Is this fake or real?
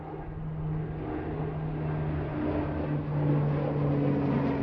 real